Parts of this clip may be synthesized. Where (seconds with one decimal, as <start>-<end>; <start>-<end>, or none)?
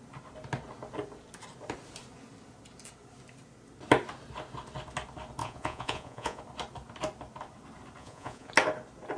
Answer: 5.4-6.4; 8.0-8.5